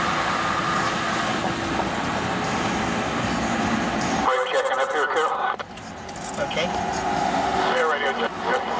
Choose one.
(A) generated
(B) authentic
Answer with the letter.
B